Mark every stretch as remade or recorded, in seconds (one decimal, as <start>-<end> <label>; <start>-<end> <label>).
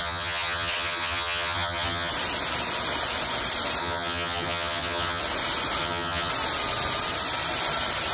0.0-2.1 remade; 2.1-3.8 recorded; 3.8-5.2 remade; 5.2-5.8 recorded; 5.8-6.3 remade; 6.3-8.1 recorded